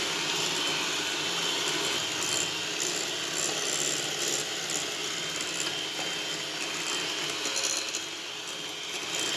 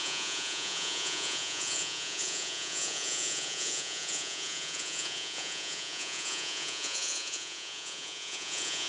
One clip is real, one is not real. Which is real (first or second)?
first